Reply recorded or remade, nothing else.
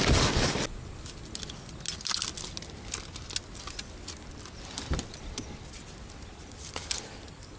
recorded